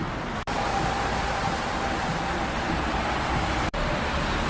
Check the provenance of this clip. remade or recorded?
remade